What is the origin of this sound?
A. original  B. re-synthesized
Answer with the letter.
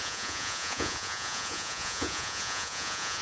B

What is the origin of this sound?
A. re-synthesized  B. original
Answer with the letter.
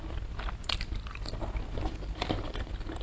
B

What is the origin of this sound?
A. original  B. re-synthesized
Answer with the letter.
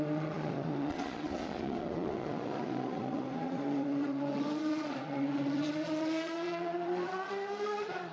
B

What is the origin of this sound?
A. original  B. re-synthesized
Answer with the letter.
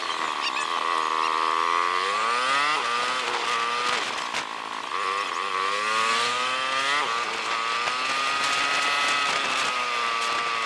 A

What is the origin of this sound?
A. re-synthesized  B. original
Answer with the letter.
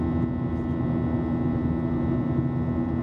B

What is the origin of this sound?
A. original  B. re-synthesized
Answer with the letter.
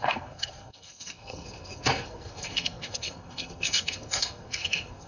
B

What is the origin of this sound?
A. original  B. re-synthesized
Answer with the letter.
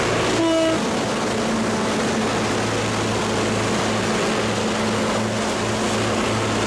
A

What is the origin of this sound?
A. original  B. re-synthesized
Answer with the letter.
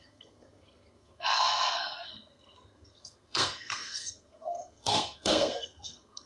B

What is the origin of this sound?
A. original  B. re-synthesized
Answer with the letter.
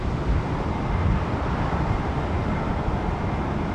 A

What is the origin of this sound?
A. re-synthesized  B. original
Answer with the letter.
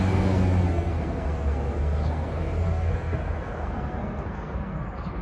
A